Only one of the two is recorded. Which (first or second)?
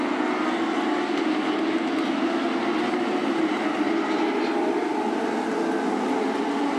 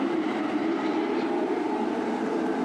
first